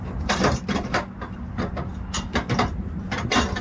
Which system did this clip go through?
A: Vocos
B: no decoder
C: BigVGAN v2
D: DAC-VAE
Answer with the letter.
B